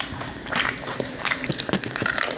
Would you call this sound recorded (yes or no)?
yes